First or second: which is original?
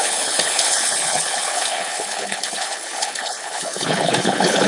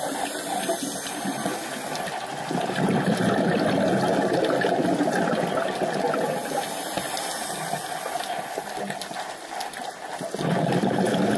second